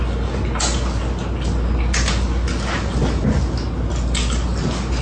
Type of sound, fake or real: real